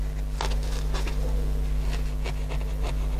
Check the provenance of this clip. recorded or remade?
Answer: recorded